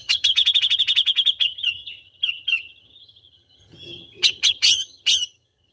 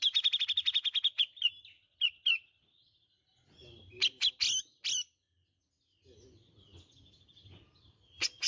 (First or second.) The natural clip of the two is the second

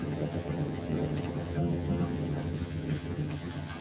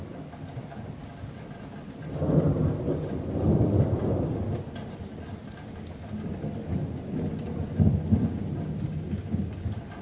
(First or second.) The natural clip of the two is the second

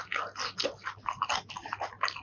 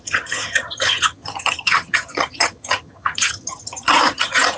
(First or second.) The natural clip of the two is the first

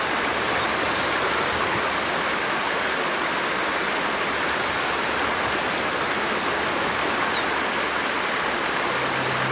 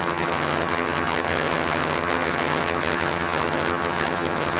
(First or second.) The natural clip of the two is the first